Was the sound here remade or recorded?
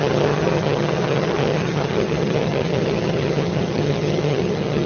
remade